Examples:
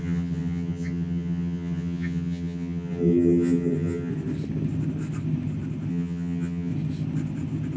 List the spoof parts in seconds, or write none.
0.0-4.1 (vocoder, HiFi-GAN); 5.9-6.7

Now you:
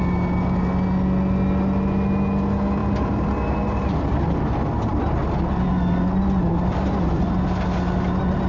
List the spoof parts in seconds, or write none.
none

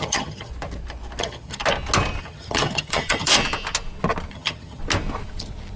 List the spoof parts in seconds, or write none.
0.0-0.5 (vocoder, HiFi-GAN); 1.2-1.6; 2.2-3.3; 4.3-4.8

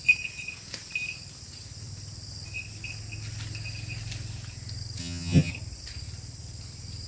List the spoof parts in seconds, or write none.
5.0-5.5 (vocoder, HiFi-GAN)

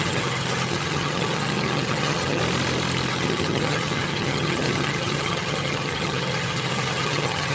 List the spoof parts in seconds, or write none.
0.0-2.4 (vocoder, HiFi-GAN); 3.1-7.5

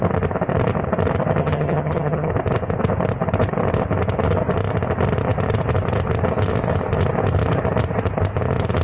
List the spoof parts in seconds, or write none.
1.4-2.3 (vocoder, HiFi-GAN)